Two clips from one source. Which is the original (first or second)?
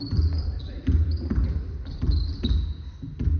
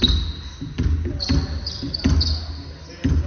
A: second